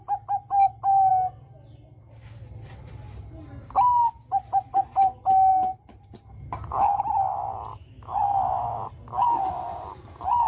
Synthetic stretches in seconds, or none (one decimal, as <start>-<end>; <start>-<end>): 7.7-8.9